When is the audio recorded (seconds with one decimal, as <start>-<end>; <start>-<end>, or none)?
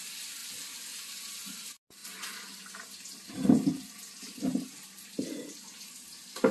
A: 0.0-6.5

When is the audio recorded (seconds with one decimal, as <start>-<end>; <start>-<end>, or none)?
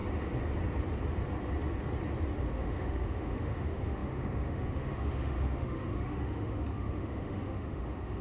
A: 0.0-2.4